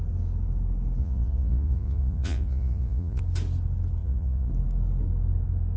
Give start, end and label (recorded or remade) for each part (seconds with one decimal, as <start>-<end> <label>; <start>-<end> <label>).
0.0-1.0 recorded; 1.0-3.2 remade; 3.2-4.0 recorded; 4.0-4.5 remade; 4.5-5.8 recorded